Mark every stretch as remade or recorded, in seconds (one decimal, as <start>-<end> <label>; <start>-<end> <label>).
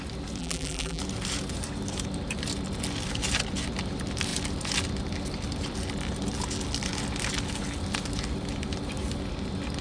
0.0-0.4 recorded; 0.4-1.0 remade; 1.0-9.8 recorded